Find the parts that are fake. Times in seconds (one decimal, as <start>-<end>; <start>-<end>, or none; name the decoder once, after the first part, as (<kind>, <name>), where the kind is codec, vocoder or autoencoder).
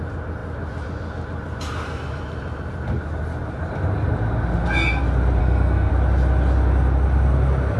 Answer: 5.4-5.9 (codec, SNAC)